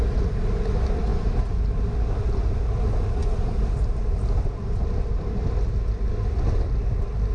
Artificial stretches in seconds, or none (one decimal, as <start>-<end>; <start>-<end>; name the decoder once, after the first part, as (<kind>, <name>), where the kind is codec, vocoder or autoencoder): none